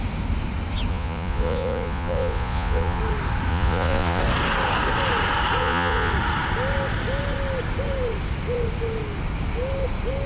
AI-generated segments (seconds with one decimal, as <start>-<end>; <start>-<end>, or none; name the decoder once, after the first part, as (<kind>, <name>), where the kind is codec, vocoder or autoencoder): 0.9-3.0 (vocoder, Vocos); 3.5-4.2; 5.6-6.1